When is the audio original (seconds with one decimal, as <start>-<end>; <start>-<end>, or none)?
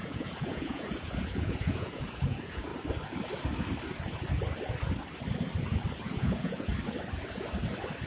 2.7-6.0; 6.7-8.1